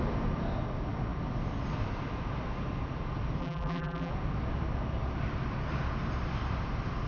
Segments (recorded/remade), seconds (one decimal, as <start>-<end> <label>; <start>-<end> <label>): 0.0-3.4 recorded; 3.4-4.1 remade; 4.1-7.1 recorded